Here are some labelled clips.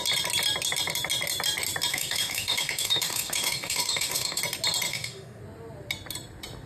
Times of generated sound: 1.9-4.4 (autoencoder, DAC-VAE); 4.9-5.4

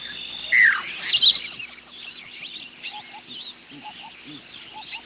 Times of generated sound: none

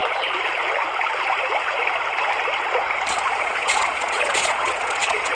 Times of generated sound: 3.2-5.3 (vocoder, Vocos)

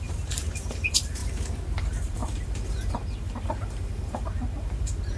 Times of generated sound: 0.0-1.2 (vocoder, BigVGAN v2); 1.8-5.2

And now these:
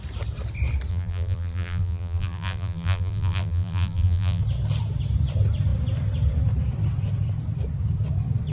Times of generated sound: 0.9-4.4 (vocoder, BigVGAN v2)